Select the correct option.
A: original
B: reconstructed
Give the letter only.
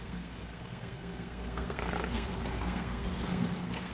B